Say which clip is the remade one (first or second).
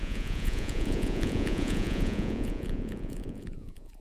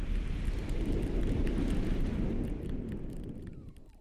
first